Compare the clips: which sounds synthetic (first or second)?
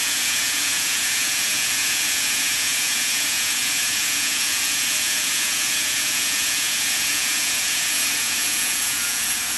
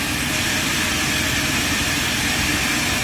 first